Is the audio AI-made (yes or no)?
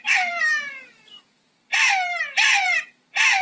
yes